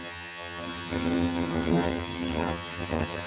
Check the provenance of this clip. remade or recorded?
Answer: remade